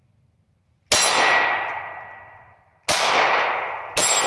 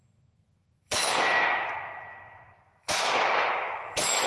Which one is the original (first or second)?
first